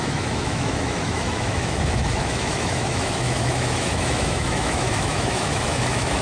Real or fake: fake